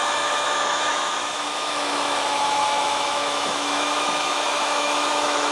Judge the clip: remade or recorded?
remade